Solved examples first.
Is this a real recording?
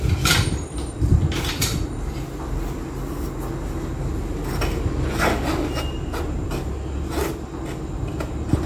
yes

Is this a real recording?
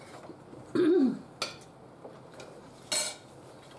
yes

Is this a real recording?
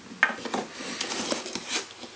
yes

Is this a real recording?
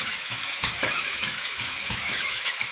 no